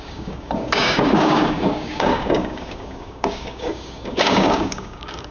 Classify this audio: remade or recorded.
remade